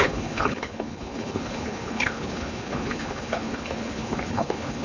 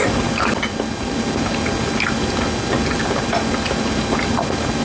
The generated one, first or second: first